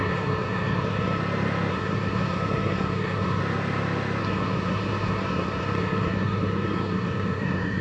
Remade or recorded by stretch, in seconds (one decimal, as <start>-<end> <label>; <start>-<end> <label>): 0.0-1.2 remade; 1.2-1.7 recorded; 1.7-3.4 remade; 3.4-4.2 recorded; 4.2-7.8 remade